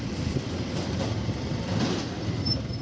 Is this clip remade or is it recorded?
recorded